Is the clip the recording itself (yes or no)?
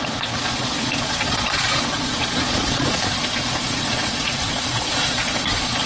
no